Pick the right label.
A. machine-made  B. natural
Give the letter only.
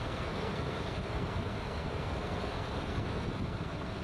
A